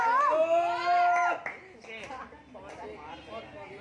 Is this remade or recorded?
recorded